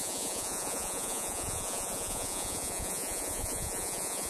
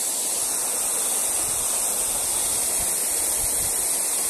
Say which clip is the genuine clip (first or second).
second